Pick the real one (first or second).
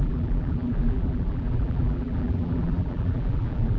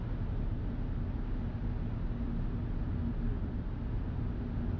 second